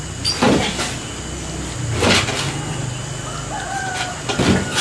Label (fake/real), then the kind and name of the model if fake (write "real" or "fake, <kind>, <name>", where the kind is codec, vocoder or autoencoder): real